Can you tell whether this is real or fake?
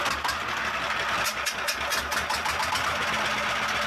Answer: real